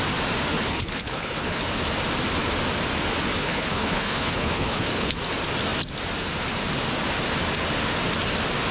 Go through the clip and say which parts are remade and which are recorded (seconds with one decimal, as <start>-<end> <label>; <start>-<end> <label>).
0.0-0.5 recorded; 0.5-1.6 remade; 1.6-3.4 recorded; 3.4-5.1 remade; 5.1-8.7 recorded